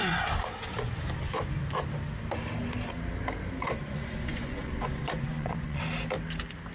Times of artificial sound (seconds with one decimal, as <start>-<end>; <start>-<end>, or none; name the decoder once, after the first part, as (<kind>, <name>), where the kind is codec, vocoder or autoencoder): 3.6-5.8 (vocoder, Vocos)